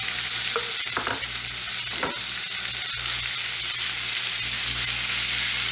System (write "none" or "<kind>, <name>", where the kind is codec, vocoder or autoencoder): none